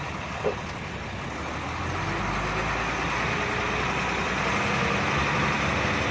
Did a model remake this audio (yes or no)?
no